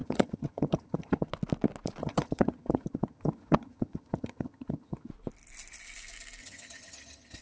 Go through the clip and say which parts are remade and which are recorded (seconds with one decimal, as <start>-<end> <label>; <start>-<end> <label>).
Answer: 0.0-1.3 remade; 1.3-2.0 recorded; 2.0-5.1 remade; 5.1-6.4 recorded; 6.4-7.4 remade

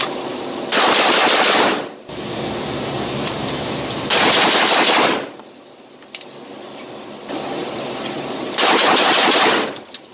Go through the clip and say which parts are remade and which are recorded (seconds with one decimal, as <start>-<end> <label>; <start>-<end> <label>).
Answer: 0.0-10.1 recorded

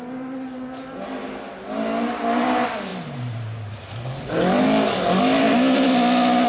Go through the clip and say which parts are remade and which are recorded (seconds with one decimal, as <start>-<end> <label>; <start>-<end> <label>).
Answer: 0.0-6.5 recorded

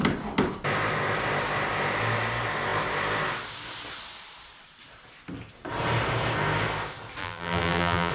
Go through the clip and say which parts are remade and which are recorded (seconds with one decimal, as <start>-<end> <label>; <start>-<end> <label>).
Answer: 0.0-7.2 recorded; 7.2-8.1 remade

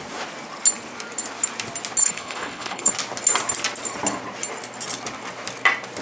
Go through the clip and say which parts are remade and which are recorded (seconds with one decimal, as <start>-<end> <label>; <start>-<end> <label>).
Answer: 0.0-2.0 recorded; 2.0-2.9 remade; 2.9-6.0 recorded

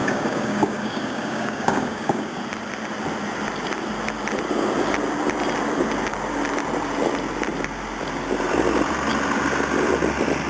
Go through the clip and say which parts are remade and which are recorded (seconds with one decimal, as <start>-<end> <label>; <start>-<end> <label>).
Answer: 0.0-2.4 remade; 2.4-10.5 recorded

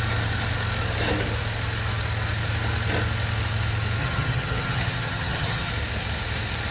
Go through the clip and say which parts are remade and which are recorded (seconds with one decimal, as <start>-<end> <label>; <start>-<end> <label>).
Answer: 0.0-4.0 recorded; 4.0-5.7 remade; 5.7-6.7 recorded

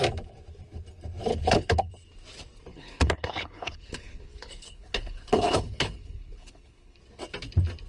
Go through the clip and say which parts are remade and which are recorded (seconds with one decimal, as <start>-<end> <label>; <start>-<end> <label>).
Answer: 0.0-1.3 recorded; 1.3-1.9 remade; 1.9-2.7 recorded; 2.7-7.0 remade; 7.0-7.9 recorded